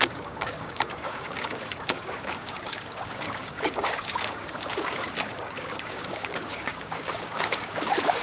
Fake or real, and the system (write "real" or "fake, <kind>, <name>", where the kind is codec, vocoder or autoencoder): fake, codec, DAC